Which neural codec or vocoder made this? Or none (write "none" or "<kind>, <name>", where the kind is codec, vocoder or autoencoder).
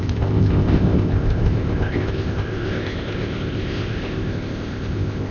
codec, ZipCodec